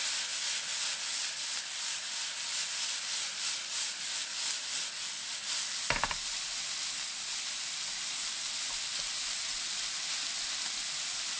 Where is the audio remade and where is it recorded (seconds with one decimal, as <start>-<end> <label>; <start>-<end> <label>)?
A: 0.0-11.4 recorded